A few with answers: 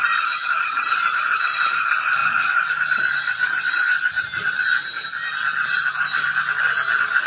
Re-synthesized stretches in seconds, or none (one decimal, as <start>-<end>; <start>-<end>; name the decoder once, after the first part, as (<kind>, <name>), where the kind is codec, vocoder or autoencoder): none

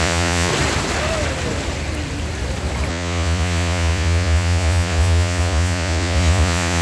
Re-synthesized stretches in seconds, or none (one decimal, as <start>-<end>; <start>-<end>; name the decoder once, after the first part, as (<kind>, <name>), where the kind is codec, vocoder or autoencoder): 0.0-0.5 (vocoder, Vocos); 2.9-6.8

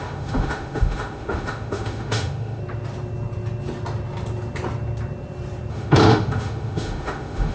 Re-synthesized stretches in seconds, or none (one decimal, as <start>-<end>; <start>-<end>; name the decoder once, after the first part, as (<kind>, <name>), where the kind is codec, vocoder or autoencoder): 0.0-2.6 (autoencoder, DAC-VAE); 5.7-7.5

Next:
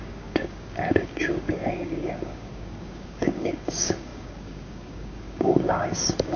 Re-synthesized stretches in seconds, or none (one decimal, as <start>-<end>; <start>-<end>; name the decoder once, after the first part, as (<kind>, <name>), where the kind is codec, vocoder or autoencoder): 0.0-6.4 (codec, DAC)

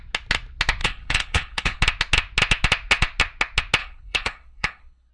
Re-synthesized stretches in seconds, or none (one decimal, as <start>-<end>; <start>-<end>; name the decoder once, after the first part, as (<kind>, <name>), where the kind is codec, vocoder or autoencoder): 0.8-1.8 (codec, HILCodec); 3.8-5.1

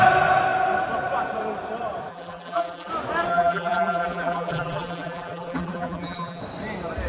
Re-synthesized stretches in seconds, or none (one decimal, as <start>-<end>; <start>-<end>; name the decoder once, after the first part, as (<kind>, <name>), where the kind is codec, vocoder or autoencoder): 2.1-2.9 (vocoder, BigVGAN v2); 3.3-6.4

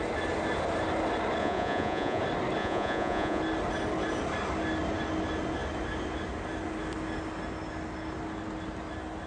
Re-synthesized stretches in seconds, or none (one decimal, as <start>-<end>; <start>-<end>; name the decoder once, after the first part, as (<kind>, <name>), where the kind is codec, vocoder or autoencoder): 1.4-2.2 (vocoder, Vocos); 2.6-3.4